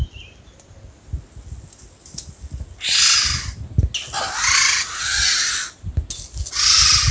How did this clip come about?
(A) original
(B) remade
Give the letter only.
A